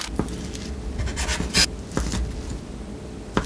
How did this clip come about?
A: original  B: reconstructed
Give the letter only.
A